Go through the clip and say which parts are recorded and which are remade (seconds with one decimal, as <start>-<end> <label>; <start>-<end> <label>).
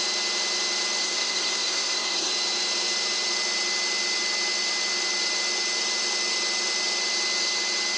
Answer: 0.0-1.0 recorded; 1.0-2.3 remade; 2.3-8.0 recorded